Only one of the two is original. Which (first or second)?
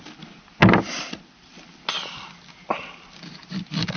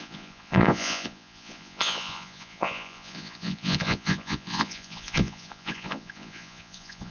first